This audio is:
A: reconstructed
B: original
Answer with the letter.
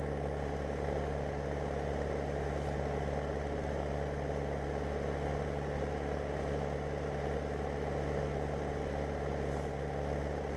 B